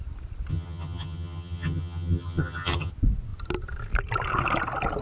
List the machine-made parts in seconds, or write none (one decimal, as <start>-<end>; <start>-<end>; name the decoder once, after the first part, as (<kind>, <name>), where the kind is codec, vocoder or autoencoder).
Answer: 0.5-2.9 (vocoder, HiFi-GAN)